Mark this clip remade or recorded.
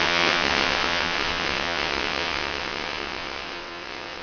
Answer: remade